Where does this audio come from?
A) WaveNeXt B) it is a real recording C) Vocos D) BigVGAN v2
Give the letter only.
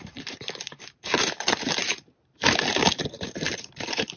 D